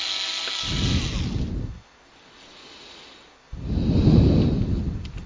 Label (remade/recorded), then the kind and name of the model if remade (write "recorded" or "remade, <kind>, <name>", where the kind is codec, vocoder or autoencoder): recorded